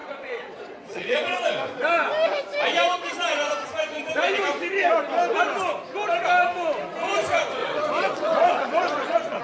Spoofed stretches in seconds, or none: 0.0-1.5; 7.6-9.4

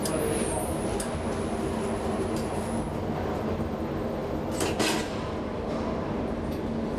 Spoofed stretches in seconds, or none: none

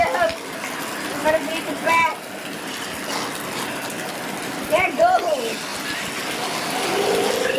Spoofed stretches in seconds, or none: none

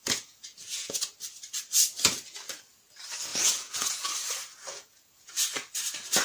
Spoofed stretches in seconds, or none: 0.0-1.1; 3.3-4.1; 4.7-5.3